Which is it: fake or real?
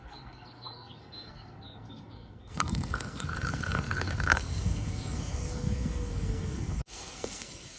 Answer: fake